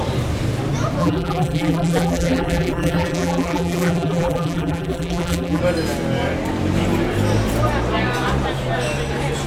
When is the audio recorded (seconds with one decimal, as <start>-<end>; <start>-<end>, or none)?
0.0-1.0; 5.6-9.5